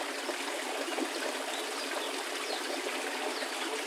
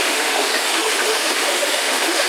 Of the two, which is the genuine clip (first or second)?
first